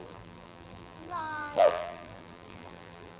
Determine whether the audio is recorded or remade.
remade